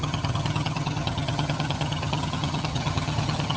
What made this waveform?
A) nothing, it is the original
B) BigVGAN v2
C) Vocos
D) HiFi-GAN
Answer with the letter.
D